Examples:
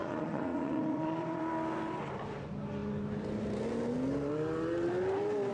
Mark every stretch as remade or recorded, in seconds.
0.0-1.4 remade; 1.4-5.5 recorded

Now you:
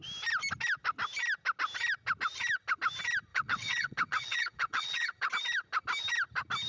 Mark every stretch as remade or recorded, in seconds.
0.0-3.3 recorded; 3.3-5.3 remade; 5.3-6.7 recorded

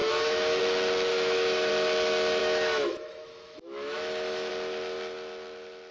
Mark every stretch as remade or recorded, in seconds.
0.0-0.6 remade; 0.6-1.1 recorded; 1.1-1.7 remade; 1.7-2.4 recorded; 2.4-4.5 remade; 4.5-5.9 recorded

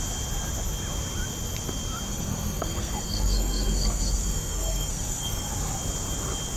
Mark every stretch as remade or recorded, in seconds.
0.0-2.1 recorded; 2.1-5.5 remade; 5.5-6.6 recorded

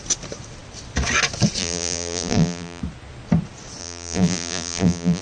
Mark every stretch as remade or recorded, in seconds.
0.0-1.6 recorded; 1.6-2.8 remade; 2.8-3.8 recorded; 3.8-5.2 remade

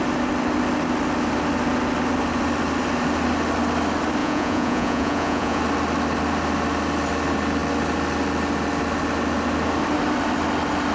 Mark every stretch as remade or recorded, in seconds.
0.0-4.2 recorded; 4.2-5.6 remade; 5.6-10.9 recorded

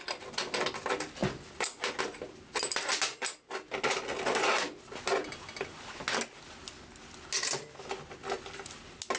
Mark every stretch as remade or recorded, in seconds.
0.0-9.2 recorded